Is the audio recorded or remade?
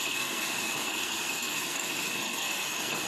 remade